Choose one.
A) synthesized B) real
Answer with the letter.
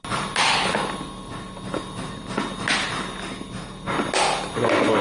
B